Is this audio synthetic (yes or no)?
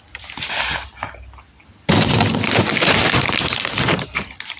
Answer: no